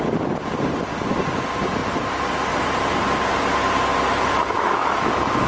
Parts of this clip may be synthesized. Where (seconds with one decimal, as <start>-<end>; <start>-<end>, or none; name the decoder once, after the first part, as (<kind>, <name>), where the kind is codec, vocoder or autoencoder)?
4.4-5.5 (autoencoder, DAC-VAE)